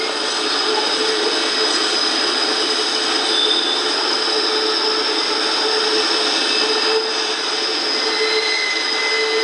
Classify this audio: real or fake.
real